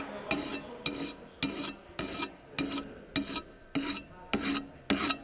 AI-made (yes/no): no